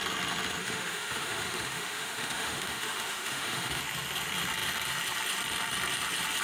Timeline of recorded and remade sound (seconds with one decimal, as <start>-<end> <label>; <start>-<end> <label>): 0.0-0.6 recorded; 0.6-3.8 remade; 3.8-6.4 recorded

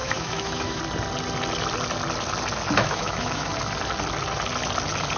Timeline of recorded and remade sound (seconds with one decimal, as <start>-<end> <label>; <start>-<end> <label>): 0.0-0.8 remade; 0.8-2.8 recorded; 2.8-3.5 remade; 3.5-5.2 recorded

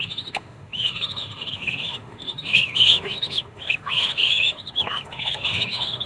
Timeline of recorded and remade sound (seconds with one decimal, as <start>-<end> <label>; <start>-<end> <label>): 0.0-6.1 remade

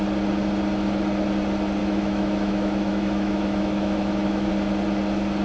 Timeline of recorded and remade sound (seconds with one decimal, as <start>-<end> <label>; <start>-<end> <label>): 0.0-1.8 recorded; 1.8-4.5 remade; 4.5-5.4 recorded

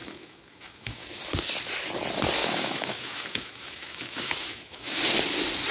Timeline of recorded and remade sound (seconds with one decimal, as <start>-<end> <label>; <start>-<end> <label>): 0.0-1.2 remade; 1.2-2.4 recorded; 2.4-5.0 remade; 5.0-5.7 recorded

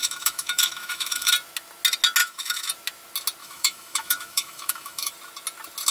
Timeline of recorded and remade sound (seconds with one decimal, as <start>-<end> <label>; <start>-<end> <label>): 0.0-1.3 remade; 1.3-2.2 recorded; 2.2-2.7 remade; 2.7-3.4 recorded; 3.4-5.1 remade; 5.1-5.9 recorded